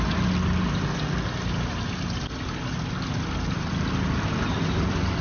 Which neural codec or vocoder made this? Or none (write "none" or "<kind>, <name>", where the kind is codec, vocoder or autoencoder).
none